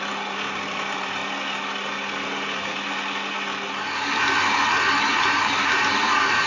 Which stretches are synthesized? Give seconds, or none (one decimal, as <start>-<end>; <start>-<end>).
0.0-1.2; 5.1-6.5

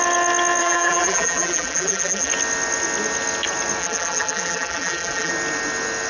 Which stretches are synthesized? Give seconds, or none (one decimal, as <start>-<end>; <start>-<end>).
0.6-2.3; 3.8-5.3

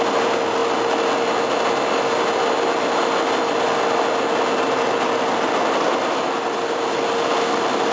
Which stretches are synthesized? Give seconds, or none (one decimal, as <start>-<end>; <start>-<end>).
none

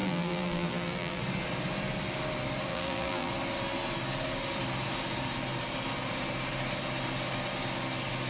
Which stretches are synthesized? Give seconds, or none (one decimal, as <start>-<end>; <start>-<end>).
0.0-1.2; 2.7-3.3

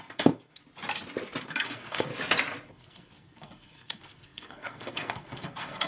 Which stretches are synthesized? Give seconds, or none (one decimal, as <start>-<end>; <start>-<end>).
0.0-0.6; 1.4-2.1; 2.7-5.9

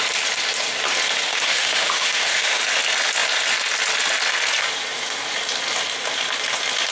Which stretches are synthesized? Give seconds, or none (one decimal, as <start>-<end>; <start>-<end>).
1.3-2.6

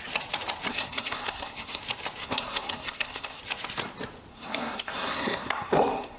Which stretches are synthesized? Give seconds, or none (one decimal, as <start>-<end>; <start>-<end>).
0.7-1.8; 2.2-3.4; 4.3-6.2

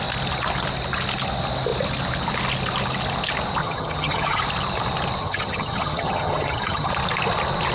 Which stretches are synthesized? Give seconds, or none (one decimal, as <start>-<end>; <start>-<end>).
3.6-4.4; 5.2-6.9